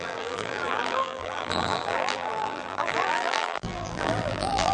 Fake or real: fake